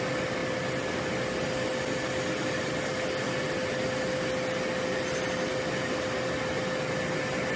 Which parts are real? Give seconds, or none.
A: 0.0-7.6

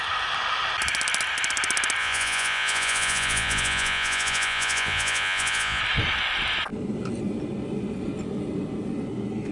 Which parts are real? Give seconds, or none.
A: 0.0-2.0; 5.8-9.5

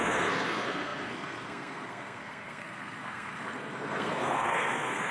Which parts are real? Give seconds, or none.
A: none

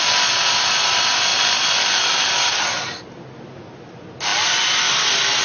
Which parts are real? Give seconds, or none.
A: 0.0-5.4

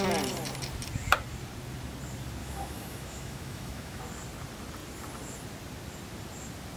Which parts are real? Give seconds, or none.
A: 0.0-2.4; 4.0-6.8

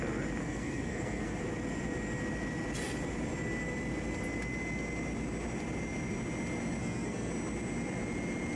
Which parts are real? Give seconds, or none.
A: 0.0-0.4; 1.4-6.8; 7.3-8.6

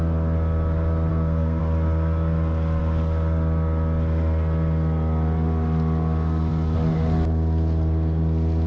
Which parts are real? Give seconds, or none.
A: 0.0-1.1; 1.6-8.7